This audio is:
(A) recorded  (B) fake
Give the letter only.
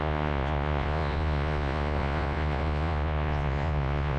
B